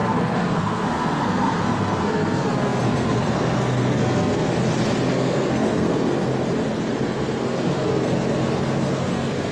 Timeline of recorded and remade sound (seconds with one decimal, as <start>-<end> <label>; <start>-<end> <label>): 0.0-4.5 remade; 4.5-5.1 recorded; 5.1-6.3 remade; 6.3-7.0 recorded; 7.0-9.5 remade